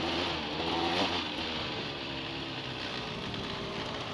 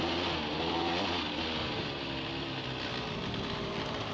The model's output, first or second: first